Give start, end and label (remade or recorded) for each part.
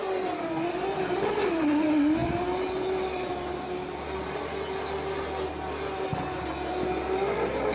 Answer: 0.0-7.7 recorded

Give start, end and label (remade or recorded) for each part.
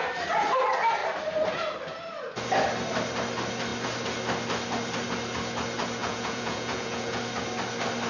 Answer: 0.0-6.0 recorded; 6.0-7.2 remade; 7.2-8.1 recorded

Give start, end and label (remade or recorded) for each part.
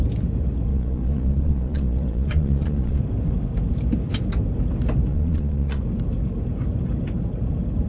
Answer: 0.0-0.7 recorded; 0.7-3.0 remade; 3.0-5.1 recorded; 5.1-5.8 remade; 5.8-7.9 recorded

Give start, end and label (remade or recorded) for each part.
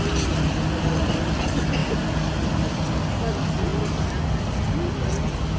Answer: 0.0-5.6 recorded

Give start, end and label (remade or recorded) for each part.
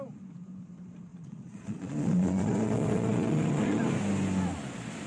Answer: 0.0-1.1 recorded; 1.1-3.8 remade; 3.8-5.1 recorded